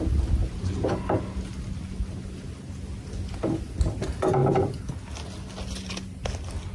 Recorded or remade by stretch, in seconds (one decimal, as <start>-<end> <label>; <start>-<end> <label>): 0.0-0.4 recorded; 0.4-1.0 remade; 1.0-6.7 recorded